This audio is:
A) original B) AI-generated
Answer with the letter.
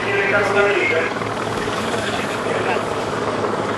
B